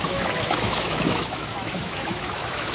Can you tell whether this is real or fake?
fake